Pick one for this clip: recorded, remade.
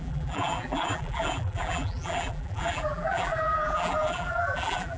remade